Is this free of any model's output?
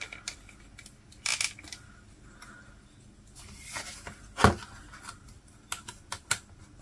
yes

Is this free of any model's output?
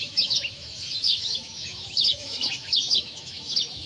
no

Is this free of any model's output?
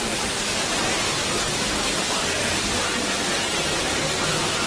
yes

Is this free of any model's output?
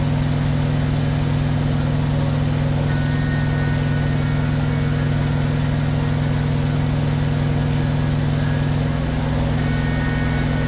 yes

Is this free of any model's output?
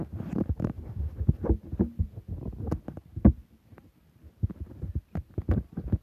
yes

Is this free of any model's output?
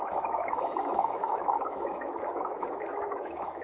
no